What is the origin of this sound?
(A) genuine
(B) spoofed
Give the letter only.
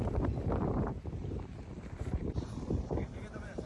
B